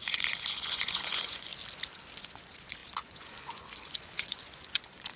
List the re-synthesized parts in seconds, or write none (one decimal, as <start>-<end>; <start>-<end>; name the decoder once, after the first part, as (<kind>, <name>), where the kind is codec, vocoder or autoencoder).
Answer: 0.0-1.5 (vocoder, Vocos); 2.2-5.2